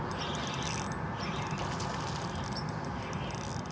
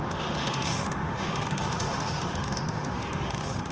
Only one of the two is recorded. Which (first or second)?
first